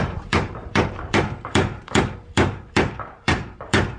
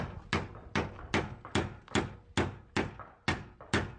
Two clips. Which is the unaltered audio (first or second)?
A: second